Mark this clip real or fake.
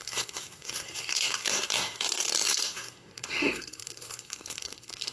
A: fake